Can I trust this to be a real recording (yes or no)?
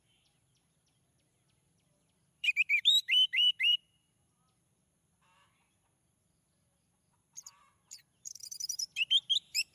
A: no